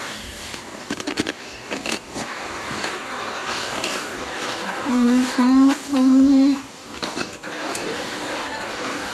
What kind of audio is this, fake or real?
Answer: fake